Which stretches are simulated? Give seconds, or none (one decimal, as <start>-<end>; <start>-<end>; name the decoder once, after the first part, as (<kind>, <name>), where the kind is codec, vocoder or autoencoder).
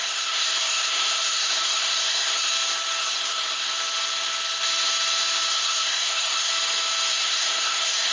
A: 0.0-2.5 (codec, SNAC); 3.0-3.7; 5.5-6.5; 7.1-8.1